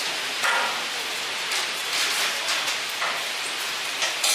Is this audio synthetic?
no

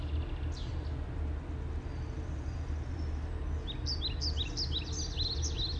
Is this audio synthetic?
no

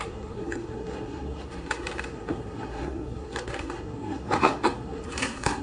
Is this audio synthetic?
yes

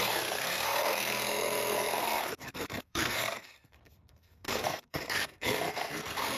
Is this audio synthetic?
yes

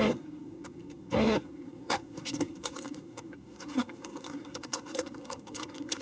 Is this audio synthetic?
yes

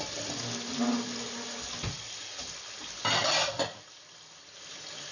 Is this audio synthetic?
no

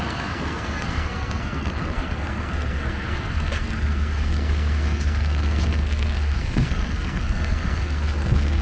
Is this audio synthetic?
yes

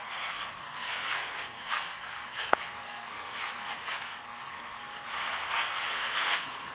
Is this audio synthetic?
yes